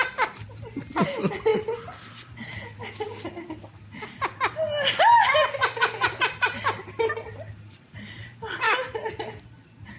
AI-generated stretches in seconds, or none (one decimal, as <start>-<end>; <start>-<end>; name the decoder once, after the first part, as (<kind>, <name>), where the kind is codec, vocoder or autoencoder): none